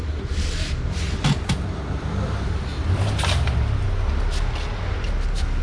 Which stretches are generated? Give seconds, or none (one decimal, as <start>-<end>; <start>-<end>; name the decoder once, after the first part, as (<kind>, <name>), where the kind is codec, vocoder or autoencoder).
0.0-2.7 (vocoder, BigVGAN v2)